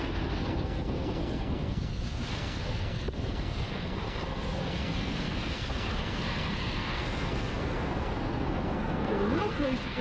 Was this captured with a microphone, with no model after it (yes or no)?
no